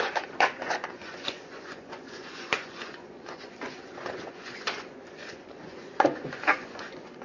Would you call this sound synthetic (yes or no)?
yes